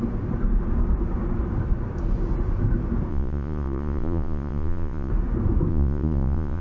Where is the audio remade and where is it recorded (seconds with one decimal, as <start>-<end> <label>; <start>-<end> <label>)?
0.0-3.1 recorded; 3.1-5.1 remade; 5.1-5.7 recorded; 5.7-6.6 remade